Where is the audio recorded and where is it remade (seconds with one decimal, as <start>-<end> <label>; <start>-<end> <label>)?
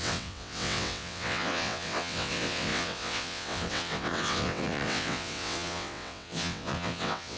0.0-7.4 remade